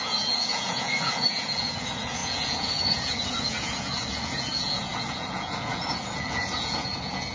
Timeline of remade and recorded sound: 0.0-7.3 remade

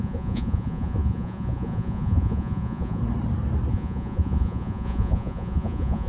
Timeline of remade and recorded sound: 0.0-3.0 remade; 3.0-3.7 recorded; 3.7-6.1 remade

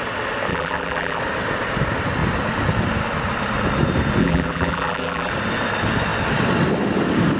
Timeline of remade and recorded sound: 0.0-0.5 recorded; 0.5-1.2 remade; 1.2-4.2 recorded; 4.2-5.3 remade; 5.3-7.4 recorded

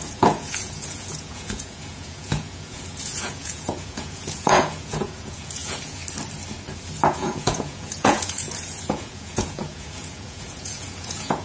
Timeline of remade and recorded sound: 0.0-6.0 remade; 6.0-7.1 recorded; 7.1-11.4 remade

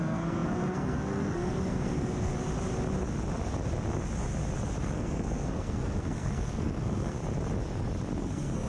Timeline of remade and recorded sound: 0.0-2.3 remade; 2.3-4.8 recorded; 4.8-7.2 remade; 7.2-8.2 recorded; 8.2-8.7 remade